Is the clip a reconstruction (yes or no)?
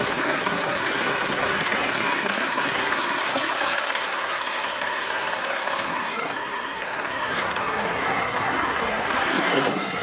yes